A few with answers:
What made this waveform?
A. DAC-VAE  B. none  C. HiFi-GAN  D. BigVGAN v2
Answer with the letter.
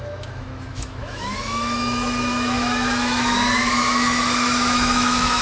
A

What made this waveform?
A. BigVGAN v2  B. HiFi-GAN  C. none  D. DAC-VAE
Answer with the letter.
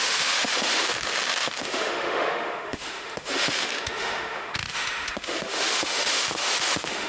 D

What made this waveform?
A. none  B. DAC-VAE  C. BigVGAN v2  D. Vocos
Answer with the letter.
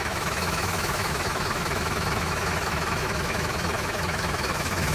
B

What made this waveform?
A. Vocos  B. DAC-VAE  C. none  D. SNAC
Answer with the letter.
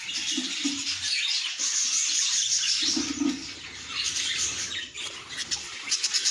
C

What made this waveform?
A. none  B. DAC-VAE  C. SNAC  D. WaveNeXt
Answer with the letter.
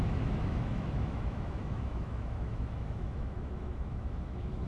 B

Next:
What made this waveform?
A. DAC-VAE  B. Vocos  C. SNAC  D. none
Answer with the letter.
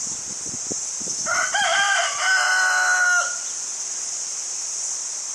D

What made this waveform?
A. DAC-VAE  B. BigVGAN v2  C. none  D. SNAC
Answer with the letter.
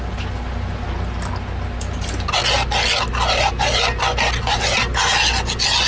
C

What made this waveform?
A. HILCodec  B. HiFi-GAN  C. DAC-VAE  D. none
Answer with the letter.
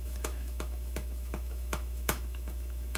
C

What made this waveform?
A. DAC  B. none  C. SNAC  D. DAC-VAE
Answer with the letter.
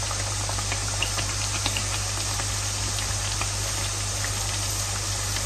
B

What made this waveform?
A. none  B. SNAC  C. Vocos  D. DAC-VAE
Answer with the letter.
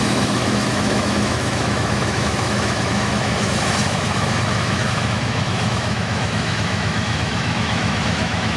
D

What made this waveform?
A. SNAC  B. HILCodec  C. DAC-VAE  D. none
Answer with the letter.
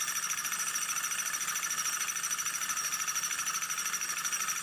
D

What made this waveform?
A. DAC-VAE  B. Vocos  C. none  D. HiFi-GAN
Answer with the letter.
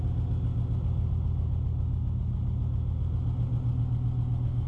C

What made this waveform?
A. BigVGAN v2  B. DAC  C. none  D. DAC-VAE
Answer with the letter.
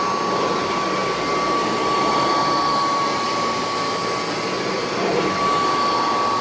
C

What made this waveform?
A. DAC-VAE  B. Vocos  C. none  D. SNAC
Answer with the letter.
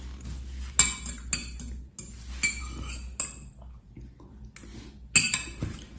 C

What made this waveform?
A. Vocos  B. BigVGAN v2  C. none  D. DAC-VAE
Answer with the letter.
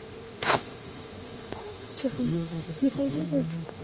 D